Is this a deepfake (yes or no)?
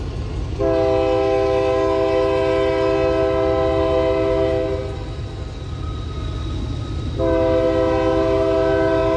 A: no